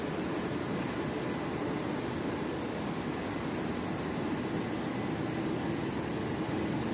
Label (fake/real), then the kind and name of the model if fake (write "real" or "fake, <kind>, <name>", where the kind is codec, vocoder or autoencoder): real